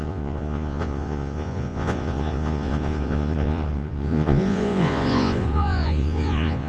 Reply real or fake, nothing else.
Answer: fake